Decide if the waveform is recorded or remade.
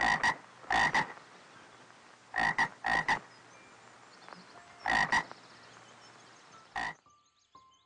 recorded